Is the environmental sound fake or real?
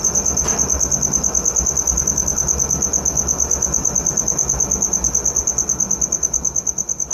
real